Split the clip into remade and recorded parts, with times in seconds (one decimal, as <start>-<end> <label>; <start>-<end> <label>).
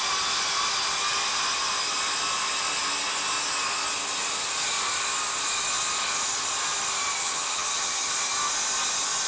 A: 0.0-7.2 recorded; 7.2-8.1 remade; 8.1-9.3 recorded